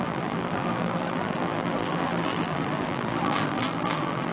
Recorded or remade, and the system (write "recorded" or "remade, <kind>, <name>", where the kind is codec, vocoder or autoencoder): remade, vocoder, BigVGAN v2